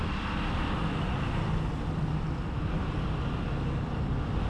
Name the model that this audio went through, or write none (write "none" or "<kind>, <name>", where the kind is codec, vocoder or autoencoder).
none